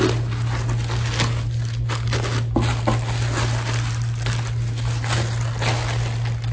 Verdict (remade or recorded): recorded